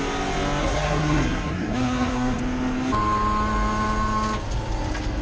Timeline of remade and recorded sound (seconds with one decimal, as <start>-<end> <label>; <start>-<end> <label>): 0.0-0.6 recorded; 0.6-2.4 remade; 2.4-5.2 recorded